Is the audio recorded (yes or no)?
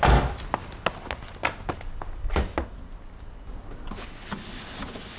yes